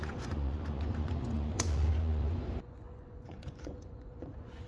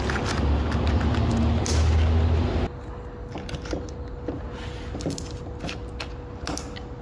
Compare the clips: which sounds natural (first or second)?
second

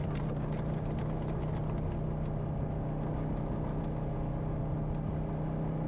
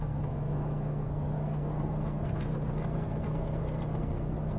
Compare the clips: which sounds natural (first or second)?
first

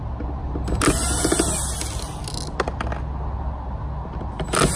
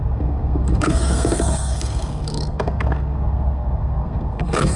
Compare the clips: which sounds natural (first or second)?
first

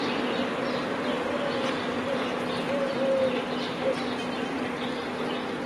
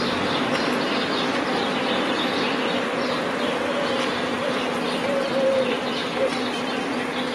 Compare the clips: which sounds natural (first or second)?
first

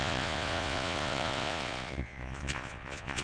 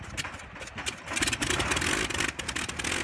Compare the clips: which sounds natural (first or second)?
second